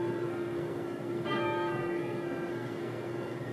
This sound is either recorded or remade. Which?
remade